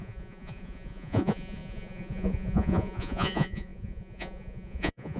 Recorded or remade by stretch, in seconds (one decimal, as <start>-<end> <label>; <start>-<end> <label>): 0.0-5.2 remade